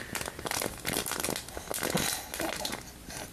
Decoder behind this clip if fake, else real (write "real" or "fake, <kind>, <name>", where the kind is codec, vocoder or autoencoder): real